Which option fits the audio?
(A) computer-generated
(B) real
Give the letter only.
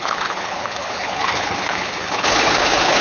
A